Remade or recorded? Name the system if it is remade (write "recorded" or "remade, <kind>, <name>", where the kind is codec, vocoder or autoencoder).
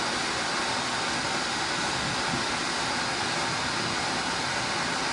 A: recorded